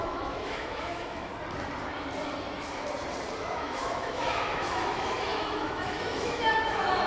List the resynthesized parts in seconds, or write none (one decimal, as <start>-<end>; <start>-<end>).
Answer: 0.0-1.3; 3.4-7.1